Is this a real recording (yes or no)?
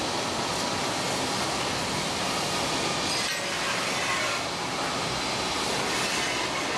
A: yes